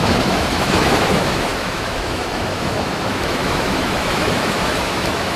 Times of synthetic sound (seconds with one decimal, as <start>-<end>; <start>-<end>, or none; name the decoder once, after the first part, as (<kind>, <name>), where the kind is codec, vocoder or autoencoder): 0.0-5.4 (autoencoder, DAC-VAE)

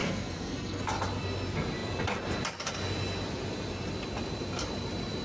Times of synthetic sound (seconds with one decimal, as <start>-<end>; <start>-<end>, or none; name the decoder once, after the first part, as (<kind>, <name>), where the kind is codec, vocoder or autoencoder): 0.0-0.8 (codec, SNAC)

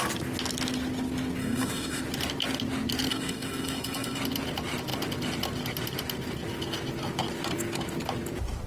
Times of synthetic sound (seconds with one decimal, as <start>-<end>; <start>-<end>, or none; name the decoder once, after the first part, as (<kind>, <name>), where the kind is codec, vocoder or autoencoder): 1.4-2.0 (autoencoder, DAC-VAE); 3.1-4.2

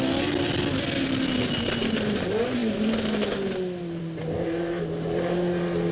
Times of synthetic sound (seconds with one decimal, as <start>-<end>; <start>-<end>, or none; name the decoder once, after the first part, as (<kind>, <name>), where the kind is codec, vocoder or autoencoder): none

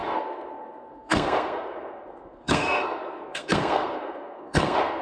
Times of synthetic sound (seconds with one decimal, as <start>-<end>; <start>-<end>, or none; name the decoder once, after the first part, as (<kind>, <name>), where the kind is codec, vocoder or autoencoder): 0.0-5.0 (codec, SNAC)

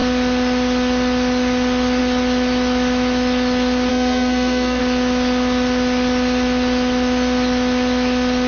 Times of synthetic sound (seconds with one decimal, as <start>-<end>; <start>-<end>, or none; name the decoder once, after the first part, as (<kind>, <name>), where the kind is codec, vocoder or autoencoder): 3.9-4.8 (codec, SNAC)

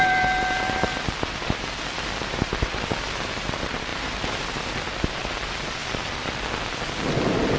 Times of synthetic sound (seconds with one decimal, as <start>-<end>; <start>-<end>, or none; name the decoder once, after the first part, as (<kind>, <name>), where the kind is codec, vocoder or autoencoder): 5.8-6.4 (vocoder, BigVGAN v2)

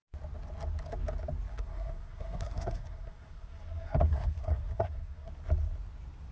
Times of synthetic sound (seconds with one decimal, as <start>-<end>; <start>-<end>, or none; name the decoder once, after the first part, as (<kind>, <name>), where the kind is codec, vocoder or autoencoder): 1.5-5.3 (codec, SNAC)